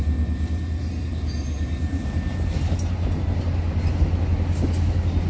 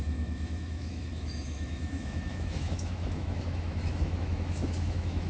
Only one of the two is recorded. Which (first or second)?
first